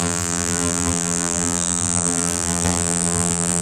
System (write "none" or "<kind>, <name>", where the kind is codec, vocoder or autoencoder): vocoder, BigVGAN v2